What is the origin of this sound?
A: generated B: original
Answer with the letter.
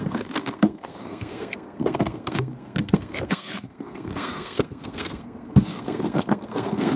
A